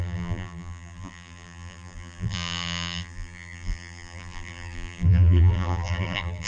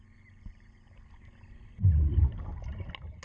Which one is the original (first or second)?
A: second